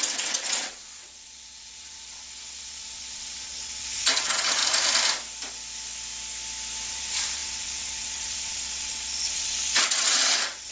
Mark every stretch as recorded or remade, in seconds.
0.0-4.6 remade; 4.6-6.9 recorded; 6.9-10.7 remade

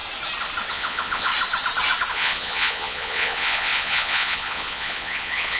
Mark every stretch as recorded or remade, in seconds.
0.0-0.7 recorded; 0.7-1.3 remade; 1.3-2.1 recorded; 2.1-5.6 remade

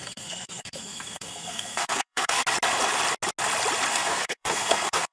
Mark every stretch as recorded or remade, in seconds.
0.0-2.4 remade; 2.4-3.9 recorded; 3.9-5.1 remade